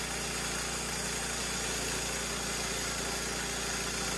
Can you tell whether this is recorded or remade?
recorded